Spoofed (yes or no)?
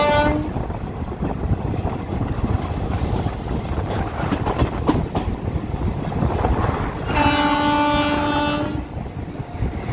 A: no